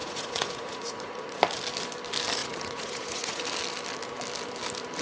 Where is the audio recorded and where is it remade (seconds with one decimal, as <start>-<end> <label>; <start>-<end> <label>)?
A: 0.0-1.4 remade; 1.4-2.4 recorded; 2.4-3.4 remade; 3.4-5.0 recorded